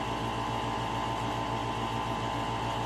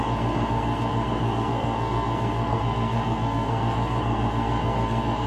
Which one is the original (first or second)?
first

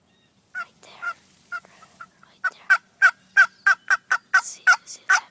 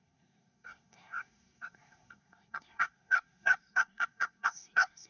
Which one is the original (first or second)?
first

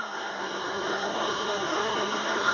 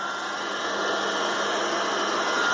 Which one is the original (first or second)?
second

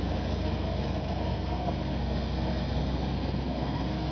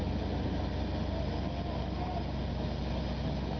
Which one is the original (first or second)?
second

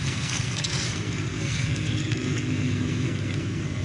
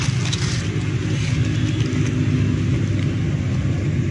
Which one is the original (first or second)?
second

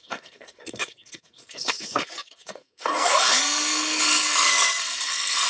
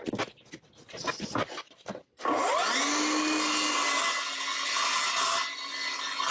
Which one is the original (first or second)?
second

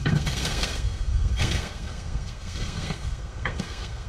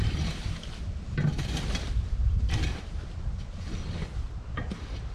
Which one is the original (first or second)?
second